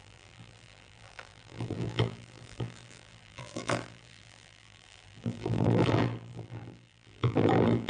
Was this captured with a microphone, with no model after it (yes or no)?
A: no